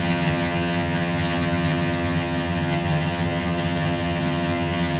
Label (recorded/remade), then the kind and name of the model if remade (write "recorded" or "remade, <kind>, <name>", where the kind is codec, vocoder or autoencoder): remade, vocoder, HiFi-GAN